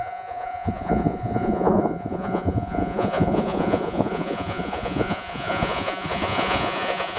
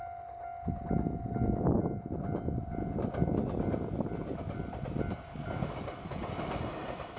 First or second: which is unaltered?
second